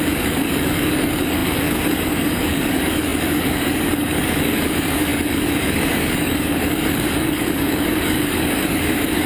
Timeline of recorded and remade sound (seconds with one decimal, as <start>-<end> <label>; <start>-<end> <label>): 0.0-9.3 remade